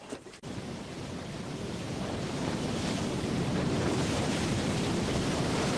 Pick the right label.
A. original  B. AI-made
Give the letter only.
B